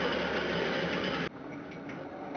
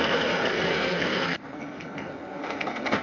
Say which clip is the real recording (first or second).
first